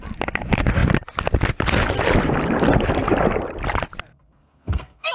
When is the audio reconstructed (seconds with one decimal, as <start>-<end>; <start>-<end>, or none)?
4.1-5.1